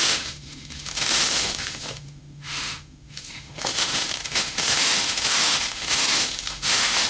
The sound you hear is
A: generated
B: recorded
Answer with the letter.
A